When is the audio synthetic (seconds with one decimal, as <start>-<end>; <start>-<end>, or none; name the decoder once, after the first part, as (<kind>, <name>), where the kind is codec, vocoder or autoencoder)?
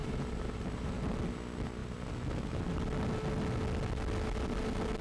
0.0-1.2 (vocoder, BigVGAN v2)